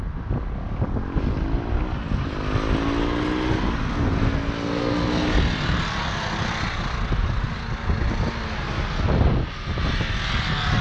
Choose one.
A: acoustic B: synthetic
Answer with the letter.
A